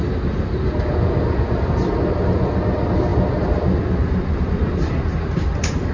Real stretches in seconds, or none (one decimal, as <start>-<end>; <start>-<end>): 0.0-5.9